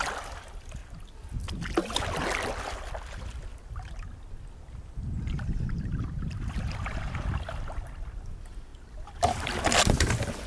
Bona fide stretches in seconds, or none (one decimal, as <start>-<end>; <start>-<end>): 0.8-2.6; 3.5-4.5